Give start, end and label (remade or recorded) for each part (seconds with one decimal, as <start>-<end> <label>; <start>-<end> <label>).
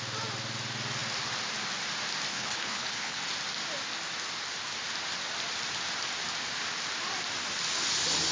0.0-2.3 recorded; 2.3-3.2 remade; 3.2-8.3 recorded